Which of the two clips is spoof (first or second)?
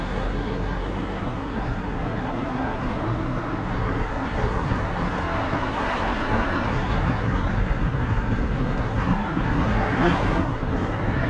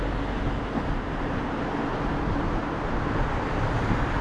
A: first